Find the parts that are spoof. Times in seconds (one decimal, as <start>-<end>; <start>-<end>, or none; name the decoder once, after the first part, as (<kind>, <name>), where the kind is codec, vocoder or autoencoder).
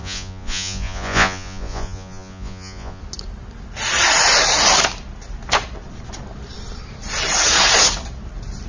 0.0-3.0 (vocoder, Vocos)